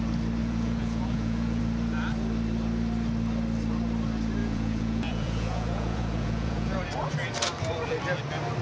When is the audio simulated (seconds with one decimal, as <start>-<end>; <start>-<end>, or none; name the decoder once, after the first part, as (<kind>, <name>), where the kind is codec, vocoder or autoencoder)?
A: 0.4-1.6 (vocoder, Vocos); 4.4-6.8